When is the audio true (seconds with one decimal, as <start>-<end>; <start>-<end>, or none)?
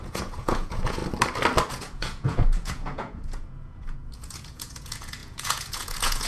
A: 1.0-1.7